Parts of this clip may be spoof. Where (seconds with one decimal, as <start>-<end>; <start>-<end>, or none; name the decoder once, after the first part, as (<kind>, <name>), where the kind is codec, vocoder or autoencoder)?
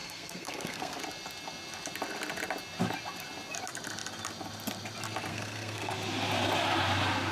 0.0-1.0 (codec, SNAC); 5.3-5.9